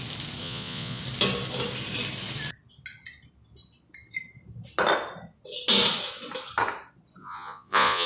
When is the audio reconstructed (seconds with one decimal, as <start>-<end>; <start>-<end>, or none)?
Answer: 0.4-1.0; 7.2-8.1